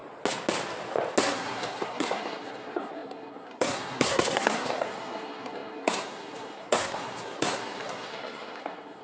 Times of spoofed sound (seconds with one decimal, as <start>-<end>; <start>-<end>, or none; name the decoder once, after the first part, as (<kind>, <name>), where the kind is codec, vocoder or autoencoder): 1.2-9.0 (codec, SNAC)